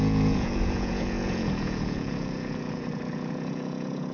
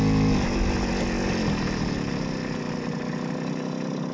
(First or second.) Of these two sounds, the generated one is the first